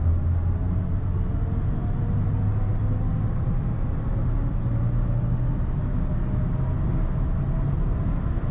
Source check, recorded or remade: recorded